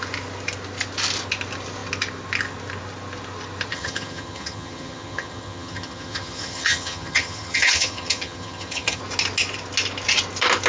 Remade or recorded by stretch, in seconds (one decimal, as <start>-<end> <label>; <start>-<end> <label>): 0.0-3.7 recorded; 3.7-9.0 remade; 9.0-10.7 recorded